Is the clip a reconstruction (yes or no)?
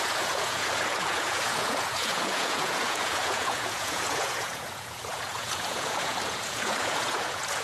yes